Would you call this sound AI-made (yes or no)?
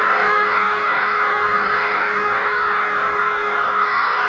yes